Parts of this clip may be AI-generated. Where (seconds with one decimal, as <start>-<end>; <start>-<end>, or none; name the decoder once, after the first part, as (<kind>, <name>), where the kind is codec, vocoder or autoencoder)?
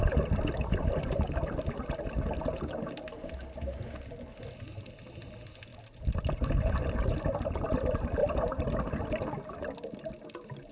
none